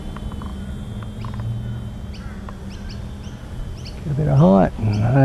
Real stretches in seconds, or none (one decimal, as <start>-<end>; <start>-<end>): 0.0-5.2